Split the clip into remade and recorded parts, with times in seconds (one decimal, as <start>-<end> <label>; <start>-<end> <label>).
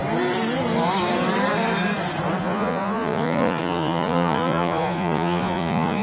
0.0-2.4 recorded; 2.4-6.0 remade